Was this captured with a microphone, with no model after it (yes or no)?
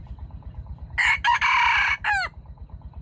yes